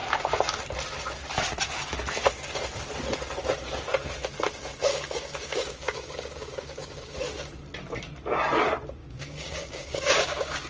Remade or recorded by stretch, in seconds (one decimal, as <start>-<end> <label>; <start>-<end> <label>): 0.0-4.9 recorded; 4.9-7.2 remade; 7.2-9.0 recorded; 9.0-10.7 remade